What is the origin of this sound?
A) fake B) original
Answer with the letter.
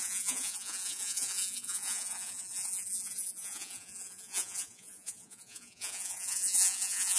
A